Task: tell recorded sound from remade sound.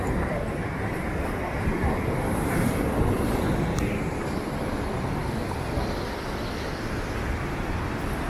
recorded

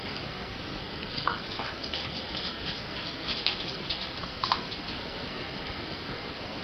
remade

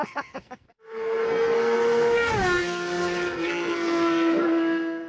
remade